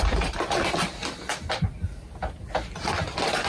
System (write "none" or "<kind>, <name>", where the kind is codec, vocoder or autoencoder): none